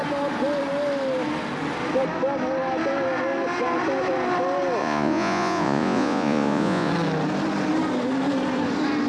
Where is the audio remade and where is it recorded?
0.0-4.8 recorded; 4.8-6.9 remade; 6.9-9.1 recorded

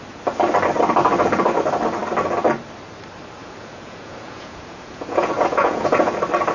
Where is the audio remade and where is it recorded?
0.0-3.4 recorded; 3.4-6.1 remade; 6.1-6.5 recorded

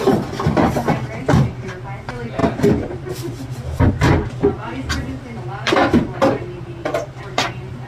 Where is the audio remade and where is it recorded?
0.0-2.4 recorded; 2.4-3.9 remade; 3.9-7.9 recorded

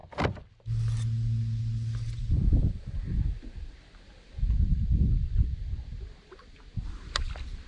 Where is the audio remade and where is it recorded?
0.0-7.7 recorded

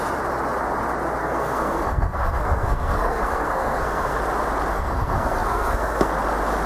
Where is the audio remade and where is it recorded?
0.0-1.2 recorded; 1.2-4.2 remade; 4.2-4.7 recorded; 4.7-6.1 remade; 6.1-6.7 recorded

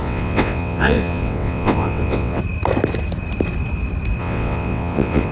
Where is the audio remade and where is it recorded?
0.0-2.4 remade; 2.4-4.2 recorded; 4.2-5.3 remade

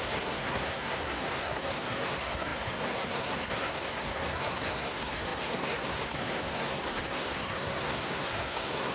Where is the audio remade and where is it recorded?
0.0-8.9 remade